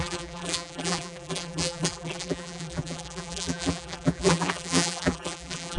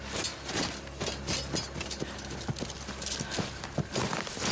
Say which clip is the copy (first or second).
first